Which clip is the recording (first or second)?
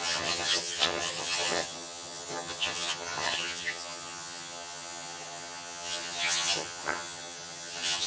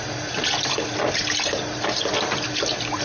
second